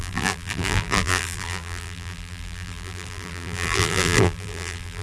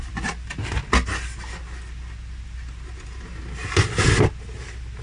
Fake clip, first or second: first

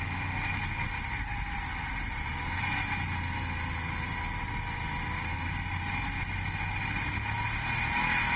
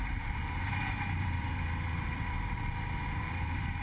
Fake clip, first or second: second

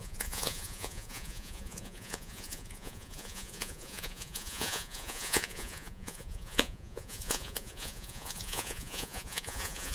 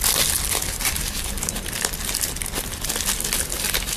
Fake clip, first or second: first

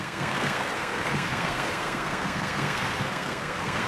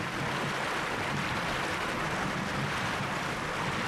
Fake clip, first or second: first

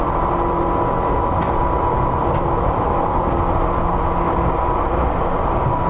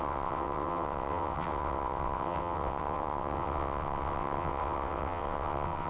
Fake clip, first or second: second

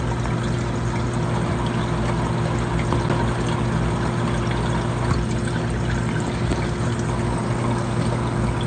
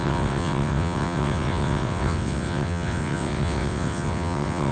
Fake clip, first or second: second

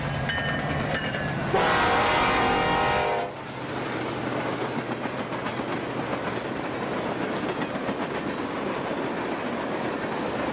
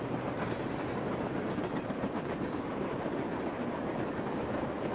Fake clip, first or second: second